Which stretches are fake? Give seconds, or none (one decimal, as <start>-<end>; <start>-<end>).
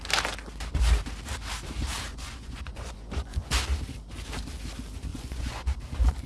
2.1-3.6; 5.1-5.7